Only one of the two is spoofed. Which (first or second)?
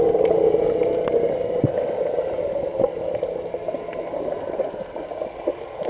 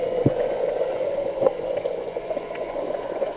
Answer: second